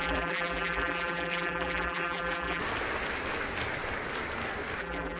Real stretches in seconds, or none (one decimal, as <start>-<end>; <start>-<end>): 2.6-4.8